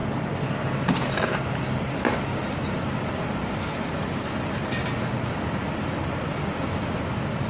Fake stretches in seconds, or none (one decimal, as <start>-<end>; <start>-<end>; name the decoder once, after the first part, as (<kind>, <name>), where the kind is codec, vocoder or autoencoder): none